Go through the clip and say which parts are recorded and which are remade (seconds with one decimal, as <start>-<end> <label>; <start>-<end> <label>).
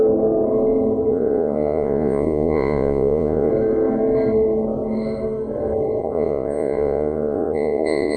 0.0-1.1 recorded; 1.1-3.5 remade; 3.5-6.0 recorded; 6.0-8.2 remade